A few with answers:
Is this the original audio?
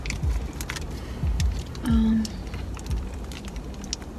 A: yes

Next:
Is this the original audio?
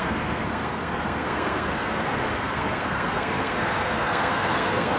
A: no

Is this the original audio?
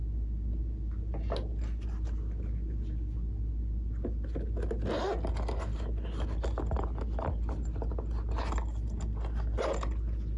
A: yes